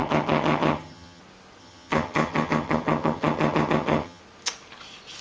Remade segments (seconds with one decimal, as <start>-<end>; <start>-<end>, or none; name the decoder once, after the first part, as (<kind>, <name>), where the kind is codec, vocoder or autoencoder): 0.0-1.2 (vocoder, HiFi-GAN); 1.6-4.2